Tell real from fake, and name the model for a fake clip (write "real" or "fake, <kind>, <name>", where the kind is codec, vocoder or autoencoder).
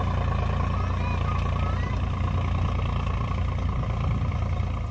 real